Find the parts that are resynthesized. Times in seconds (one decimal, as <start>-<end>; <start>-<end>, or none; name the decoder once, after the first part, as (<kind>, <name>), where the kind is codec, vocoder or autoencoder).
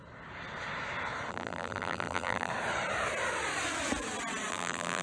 1.3-2.5 (vocoder, BigVGAN v2); 4.5-5.0